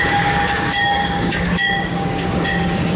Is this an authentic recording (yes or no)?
no